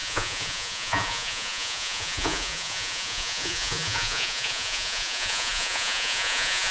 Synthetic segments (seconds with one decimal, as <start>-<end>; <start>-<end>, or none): 0.0-6.7